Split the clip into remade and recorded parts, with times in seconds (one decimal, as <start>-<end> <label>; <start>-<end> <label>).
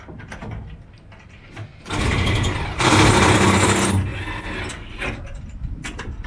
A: 0.0-6.3 recorded